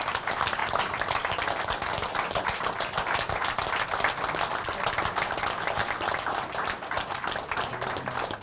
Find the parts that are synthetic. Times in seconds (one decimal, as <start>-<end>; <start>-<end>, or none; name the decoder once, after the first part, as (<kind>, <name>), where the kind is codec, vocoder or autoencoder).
none